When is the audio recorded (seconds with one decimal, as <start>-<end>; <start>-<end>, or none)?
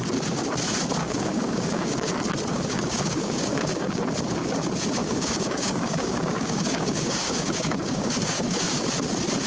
0.0-1.0; 2.1-2.5; 4.0-5.0; 8.8-9.5